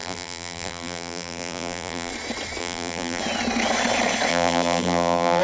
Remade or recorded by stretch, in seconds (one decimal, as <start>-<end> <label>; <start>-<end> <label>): 0.0-2.1 remade; 2.1-2.6 recorded; 2.6-3.2 remade; 3.2-4.3 recorded; 4.3-5.4 remade